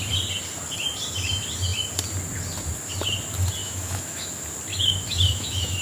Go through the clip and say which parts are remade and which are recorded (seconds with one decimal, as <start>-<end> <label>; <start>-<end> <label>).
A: 0.0-3.6 recorded; 3.6-4.3 remade; 4.3-4.7 recorded; 4.7-5.8 remade